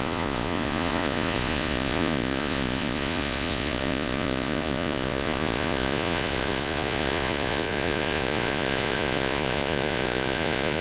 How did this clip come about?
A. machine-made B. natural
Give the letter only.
A